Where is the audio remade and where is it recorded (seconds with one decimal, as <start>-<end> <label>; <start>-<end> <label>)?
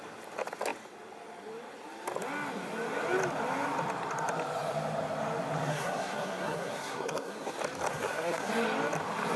0.0-5.7 recorded; 5.7-7.5 remade; 7.5-7.9 recorded; 7.9-8.5 remade; 8.5-9.4 recorded